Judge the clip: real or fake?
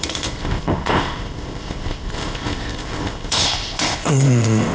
fake